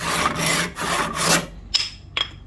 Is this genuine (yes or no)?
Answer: yes